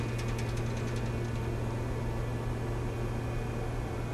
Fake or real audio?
real